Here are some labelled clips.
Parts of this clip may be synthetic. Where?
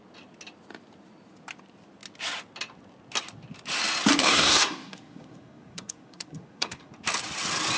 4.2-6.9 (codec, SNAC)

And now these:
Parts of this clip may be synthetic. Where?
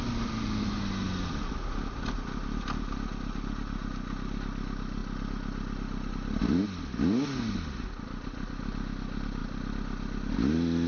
none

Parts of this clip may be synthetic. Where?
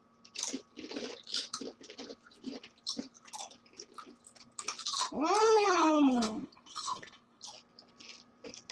5.4-7.4 (codec, HILCodec)